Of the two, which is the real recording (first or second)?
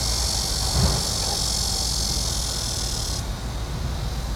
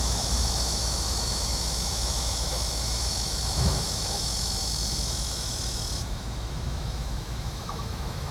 first